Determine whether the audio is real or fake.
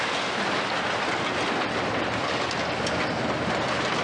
real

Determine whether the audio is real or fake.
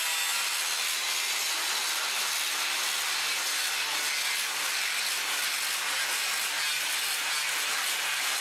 real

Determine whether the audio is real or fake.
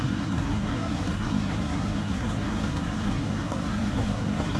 fake